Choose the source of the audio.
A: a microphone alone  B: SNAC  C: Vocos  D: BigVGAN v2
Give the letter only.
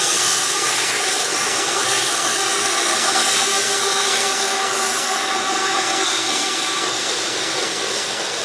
B